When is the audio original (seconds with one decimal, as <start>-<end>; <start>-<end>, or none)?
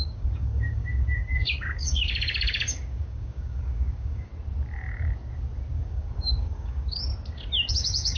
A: 4.3-5.7; 7.1-7.7